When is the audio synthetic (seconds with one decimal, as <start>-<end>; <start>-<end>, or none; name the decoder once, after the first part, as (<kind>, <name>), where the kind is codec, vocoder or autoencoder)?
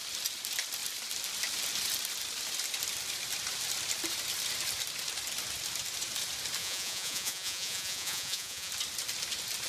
6.6-8.7 (vocoder, Vocos)